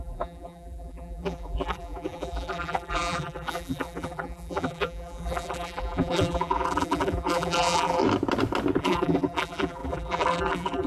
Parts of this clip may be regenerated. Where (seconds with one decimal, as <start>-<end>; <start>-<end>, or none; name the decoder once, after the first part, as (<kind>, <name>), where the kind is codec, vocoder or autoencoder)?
0.0-8.0 (vocoder, BigVGAN v2); 8.8-10.9